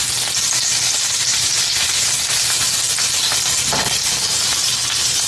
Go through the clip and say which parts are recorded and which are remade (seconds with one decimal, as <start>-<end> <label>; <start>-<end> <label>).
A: 0.0-5.3 recorded